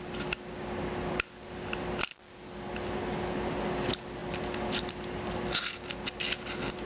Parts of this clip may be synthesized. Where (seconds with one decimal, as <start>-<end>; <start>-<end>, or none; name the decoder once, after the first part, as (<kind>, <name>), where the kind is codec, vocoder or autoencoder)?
none